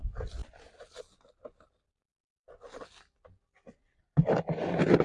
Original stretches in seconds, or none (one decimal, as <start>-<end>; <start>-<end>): 0.0-0.4; 1.0-5.0